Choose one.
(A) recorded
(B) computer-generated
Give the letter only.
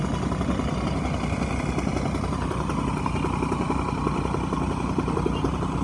A